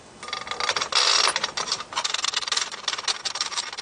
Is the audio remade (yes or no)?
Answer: no